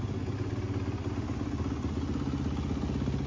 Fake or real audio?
real